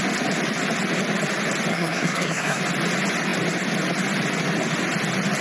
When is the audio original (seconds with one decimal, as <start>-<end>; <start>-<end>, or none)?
0.0-1.7; 2.6-5.4